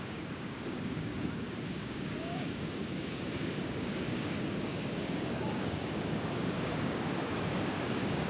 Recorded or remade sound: remade